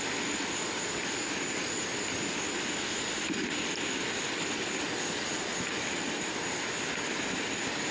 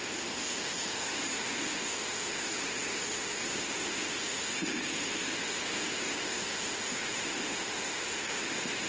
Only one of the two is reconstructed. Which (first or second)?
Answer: second